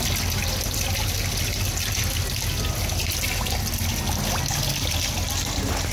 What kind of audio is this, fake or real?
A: real